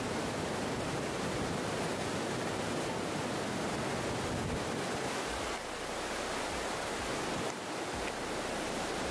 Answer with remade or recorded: recorded